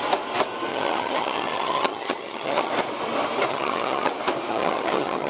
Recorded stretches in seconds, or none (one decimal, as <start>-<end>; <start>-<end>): 0.0-0.7; 2.7-3.5; 4.1-4.5